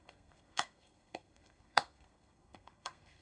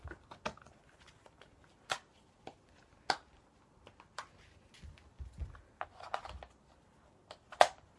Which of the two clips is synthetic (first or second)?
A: first